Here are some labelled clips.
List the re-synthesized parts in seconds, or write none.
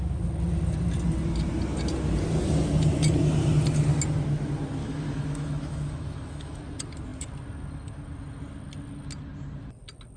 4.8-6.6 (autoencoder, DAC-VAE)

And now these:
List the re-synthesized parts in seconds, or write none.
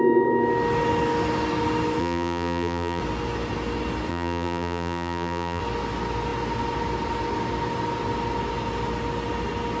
2.0-3.0 (vocoder, BigVGAN v2); 4.1-5.6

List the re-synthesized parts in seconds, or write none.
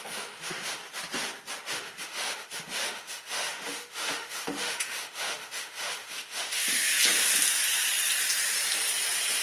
0.0-0.8 (autoencoder, DAC-VAE); 1.7-6.9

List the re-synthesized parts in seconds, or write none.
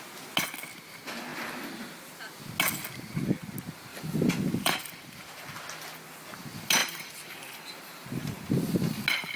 3.9-5.2 (vocoder, BigVGAN v2); 6.8-9.0